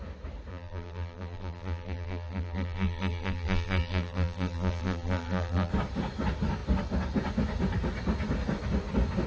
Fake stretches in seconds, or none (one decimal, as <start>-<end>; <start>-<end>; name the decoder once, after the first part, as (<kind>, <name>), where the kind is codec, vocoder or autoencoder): 0.5-5.7 (vocoder, BigVGAN v2)